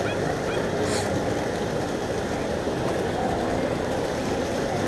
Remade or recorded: recorded